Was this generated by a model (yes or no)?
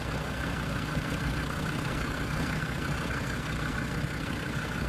yes